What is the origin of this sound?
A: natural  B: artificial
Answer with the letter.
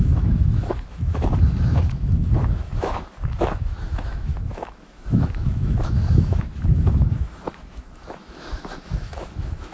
B